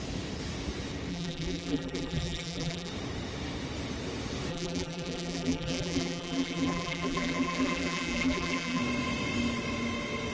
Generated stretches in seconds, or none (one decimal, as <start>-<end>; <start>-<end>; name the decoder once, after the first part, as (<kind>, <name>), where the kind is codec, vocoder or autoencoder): 1.1-2.9 (vocoder, BigVGAN v2); 4.5-8.8